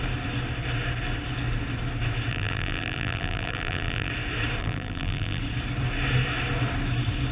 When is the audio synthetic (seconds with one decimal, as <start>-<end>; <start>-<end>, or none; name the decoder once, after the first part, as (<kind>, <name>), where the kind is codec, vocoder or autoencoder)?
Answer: 2.3-4.1 (vocoder, BigVGAN v2); 4.6-5.4